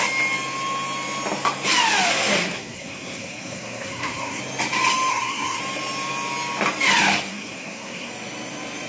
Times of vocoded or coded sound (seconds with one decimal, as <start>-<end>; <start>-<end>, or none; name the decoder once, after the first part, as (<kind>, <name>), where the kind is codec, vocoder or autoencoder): 2.1-4.4 (codec, SNAC); 5.1-5.6; 7.3-8.1